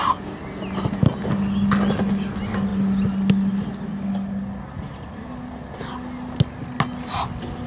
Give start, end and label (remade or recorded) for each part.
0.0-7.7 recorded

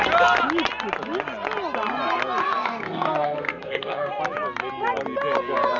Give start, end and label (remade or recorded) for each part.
0.0-2.4 recorded; 2.4-4.2 remade; 4.2-5.8 recorded